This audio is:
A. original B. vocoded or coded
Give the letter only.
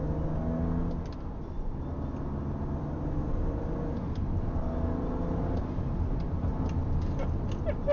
A